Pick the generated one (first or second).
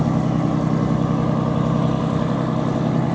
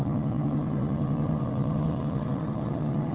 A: second